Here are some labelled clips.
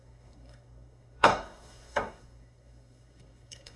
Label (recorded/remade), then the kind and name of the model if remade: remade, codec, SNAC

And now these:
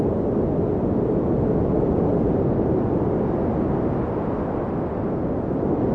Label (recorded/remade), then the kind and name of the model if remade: recorded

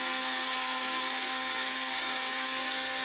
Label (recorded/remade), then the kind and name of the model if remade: remade, codec, SNAC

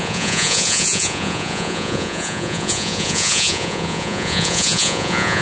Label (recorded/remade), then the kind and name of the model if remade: remade, vocoder, Vocos